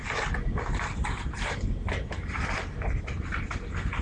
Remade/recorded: recorded